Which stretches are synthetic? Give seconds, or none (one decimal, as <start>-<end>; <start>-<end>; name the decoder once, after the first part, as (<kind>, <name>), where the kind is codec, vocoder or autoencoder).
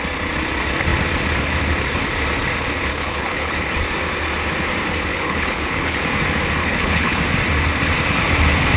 2.9-3.6 (codec, HILCodec); 5.1-6.0; 6.6-7.2